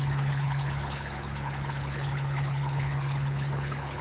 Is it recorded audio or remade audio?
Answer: remade